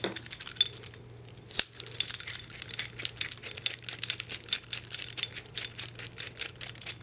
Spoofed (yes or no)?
no